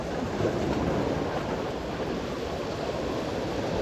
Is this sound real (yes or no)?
yes